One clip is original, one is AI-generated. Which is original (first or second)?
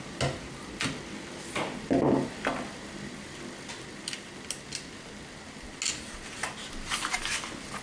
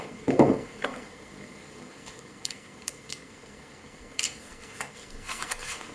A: first